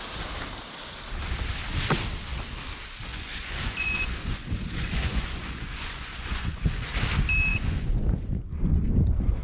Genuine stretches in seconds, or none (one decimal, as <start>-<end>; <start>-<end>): 0.0-3.1; 6.9-7.5; 9.0-9.4